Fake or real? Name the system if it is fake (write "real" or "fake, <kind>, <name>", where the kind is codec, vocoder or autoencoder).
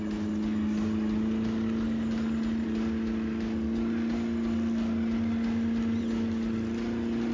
real